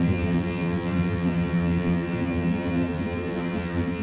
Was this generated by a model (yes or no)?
yes